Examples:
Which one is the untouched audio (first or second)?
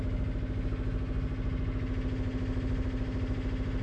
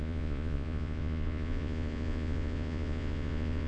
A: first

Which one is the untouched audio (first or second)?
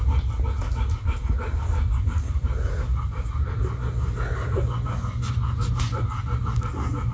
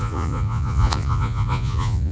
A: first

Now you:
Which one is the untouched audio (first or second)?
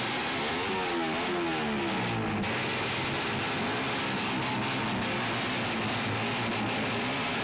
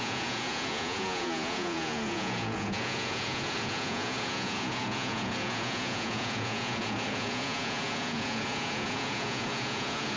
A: first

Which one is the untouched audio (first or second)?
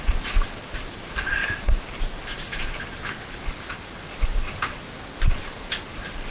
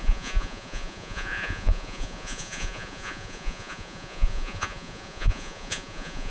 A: first